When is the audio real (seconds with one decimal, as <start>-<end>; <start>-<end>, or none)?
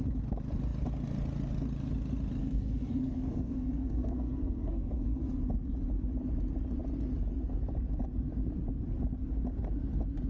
0.0-2.4; 5.2-10.3